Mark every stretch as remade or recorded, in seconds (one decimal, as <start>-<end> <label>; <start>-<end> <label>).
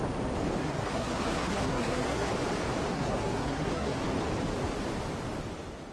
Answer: 0.0-0.6 recorded; 0.6-2.3 remade; 2.3-2.9 recorded; 2.9-4.0 remade; 4.0-5.9 recorded